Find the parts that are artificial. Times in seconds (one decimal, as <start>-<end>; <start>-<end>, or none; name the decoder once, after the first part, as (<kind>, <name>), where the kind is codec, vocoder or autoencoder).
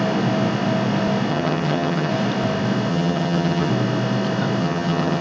1.3-2.1 (vocoder, HiFi-GAN); 2.9-3.7; 4.6-5.2